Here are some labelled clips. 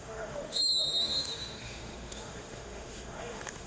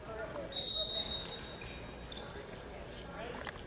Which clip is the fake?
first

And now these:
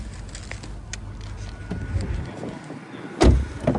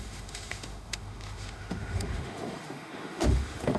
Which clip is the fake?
second